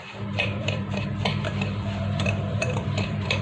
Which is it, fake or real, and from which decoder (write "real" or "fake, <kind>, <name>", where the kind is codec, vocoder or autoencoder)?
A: fake, vocoder, BigVGAN v2